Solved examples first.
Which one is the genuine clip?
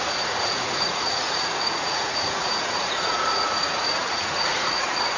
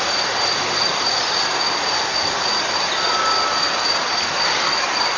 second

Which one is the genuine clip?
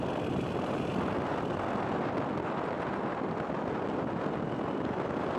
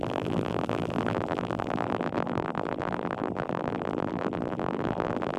first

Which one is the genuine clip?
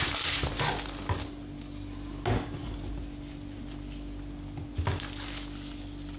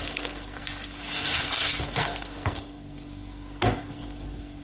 first